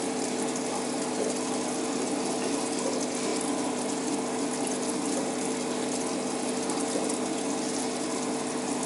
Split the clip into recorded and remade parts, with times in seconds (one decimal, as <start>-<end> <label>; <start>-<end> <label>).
0.0-8.9 recorded